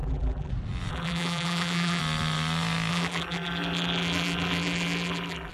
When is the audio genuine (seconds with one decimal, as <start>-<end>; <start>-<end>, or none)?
0.5-0.9; 2.0-2.9